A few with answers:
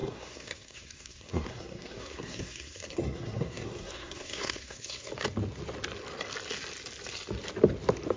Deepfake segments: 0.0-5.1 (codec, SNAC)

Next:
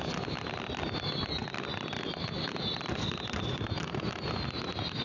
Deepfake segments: 1.4-3.7 (vocoder, BigVGAN v2)

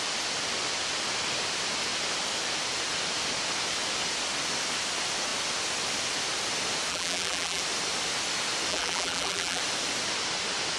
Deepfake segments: 6.9-7.6 (vocoder, BigVGAN v2); 8.7-9.6

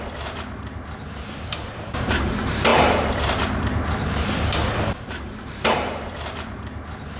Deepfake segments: 0.0-7.2 (vocoder, BigVGAN v2)

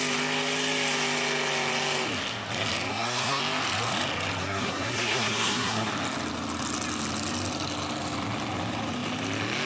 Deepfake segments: 2.9-3.4 (codec, SNAC); 4.4-5.9

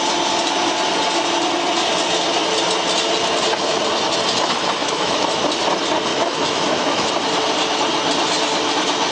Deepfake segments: 4.8-5.4 (autoencoder, DAC-VAE); 6.1-7.1